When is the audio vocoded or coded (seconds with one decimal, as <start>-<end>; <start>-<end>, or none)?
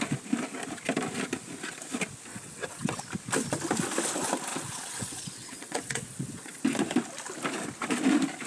2.3-3.0; 4.5-6.6